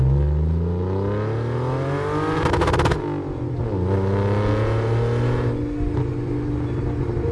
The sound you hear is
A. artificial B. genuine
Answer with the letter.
B